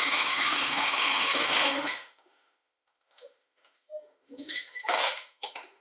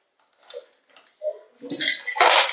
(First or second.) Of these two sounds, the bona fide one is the second